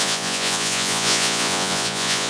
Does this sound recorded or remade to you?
remade